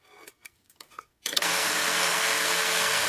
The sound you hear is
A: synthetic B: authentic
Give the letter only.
A